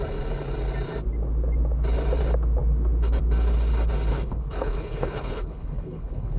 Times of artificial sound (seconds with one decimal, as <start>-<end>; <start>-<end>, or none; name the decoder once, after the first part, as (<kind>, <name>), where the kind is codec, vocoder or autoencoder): 4.1-6.4 (codec, HILCodec)